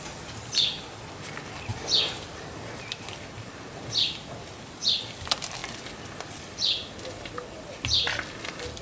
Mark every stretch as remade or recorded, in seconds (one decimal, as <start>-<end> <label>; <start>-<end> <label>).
0.0-8.8 recorded